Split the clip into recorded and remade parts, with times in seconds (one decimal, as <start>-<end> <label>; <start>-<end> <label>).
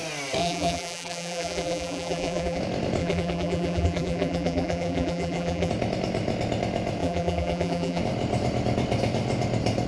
0.0-0.4 recorded; 0.4-2.6 remade; 2.6-3.0 recorded; 3.0-5.7 remade; 5.7-7.0 recorded; 7.0-8.0 remade; 8.0-9.9 recorded